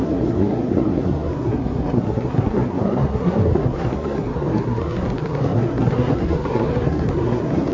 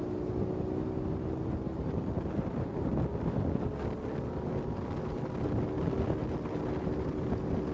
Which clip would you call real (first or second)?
second